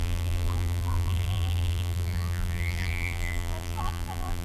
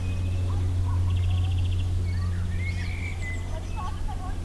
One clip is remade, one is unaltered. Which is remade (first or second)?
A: first